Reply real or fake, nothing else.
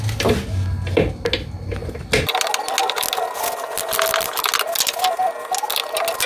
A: real